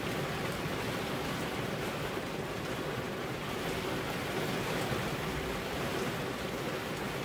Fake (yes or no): no